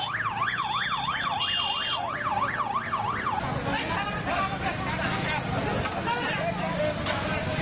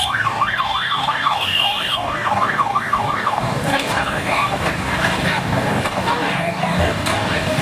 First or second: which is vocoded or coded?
second